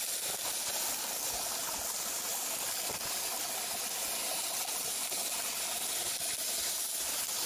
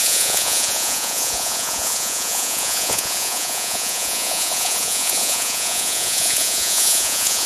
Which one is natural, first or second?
first